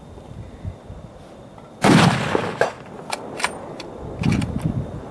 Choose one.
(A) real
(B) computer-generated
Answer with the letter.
A